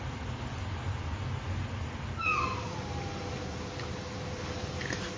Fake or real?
real